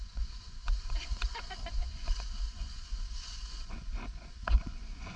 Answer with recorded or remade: remade